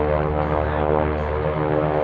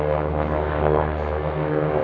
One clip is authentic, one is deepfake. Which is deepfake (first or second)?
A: second